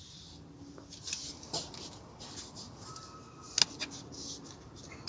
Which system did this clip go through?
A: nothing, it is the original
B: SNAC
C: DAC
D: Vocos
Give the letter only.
A